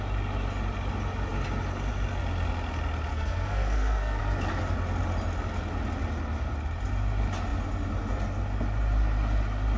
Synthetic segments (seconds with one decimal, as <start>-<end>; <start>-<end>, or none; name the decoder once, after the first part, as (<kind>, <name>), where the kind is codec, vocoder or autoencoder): 3.1-4.2 (codec, SNAC)